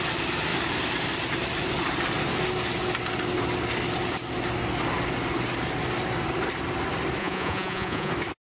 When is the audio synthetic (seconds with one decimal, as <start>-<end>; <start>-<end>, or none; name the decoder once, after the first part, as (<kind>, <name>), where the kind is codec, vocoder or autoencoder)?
7.2-8.1 (vocoder, Vocos)